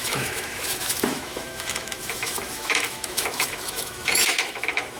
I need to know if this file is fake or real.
fake